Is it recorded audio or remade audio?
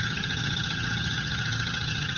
remade